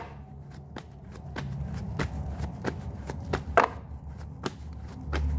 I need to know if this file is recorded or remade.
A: recorded